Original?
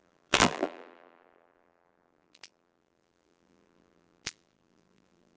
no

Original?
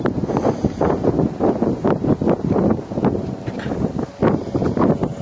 yes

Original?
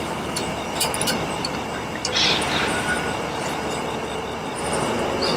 yes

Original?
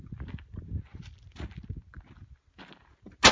yes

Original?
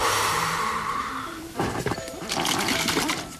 no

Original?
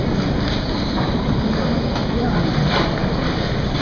yes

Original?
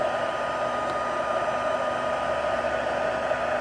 no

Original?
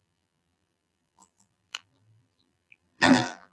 no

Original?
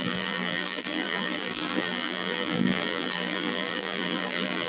no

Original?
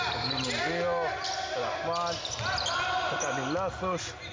yes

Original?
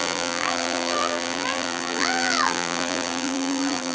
no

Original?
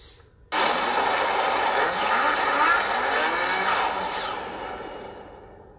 yes